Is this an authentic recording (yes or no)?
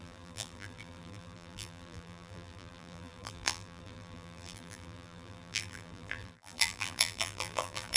no